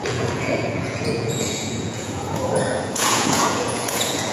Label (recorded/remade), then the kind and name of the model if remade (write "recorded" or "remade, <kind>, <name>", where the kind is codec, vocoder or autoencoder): remade, vocoder, Vocos